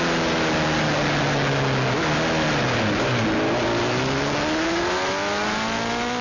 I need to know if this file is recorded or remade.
recorded